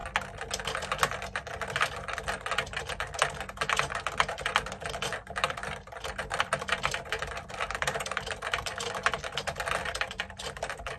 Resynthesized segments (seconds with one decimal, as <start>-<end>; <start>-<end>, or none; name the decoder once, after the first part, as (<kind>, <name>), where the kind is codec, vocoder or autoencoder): 4.3-11.0 (vocoder, BigVGAN v2)

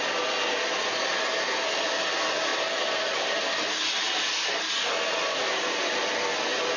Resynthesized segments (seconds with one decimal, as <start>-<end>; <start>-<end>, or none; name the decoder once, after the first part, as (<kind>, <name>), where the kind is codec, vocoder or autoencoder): none

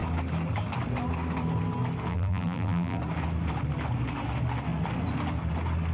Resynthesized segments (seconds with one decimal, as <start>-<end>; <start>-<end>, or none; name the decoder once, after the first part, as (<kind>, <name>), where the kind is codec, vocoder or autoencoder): 2.1-3.0 (vocoder, BigVGAN v2)

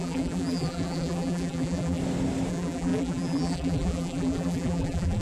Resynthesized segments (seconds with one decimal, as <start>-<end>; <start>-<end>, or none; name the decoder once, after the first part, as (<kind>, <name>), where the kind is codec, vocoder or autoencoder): 0.0-2.0 (vocoder, BigVGAN v2); 2.5-5.2